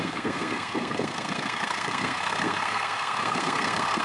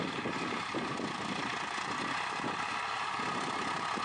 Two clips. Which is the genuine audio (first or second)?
second